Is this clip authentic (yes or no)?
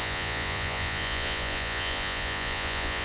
no